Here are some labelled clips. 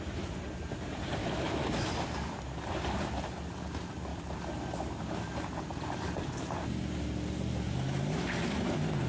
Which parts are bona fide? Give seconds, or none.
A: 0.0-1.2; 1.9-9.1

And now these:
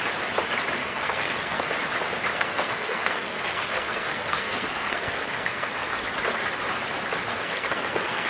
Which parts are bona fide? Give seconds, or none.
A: 0.0-0.8; 1.7-2.3; 6.0-7.3